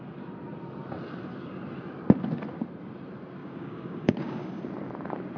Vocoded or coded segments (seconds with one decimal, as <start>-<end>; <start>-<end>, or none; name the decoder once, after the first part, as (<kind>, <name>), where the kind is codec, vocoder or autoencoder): 3.4-4.6 (codec, DAC)